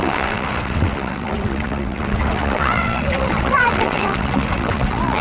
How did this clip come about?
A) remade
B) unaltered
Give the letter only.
A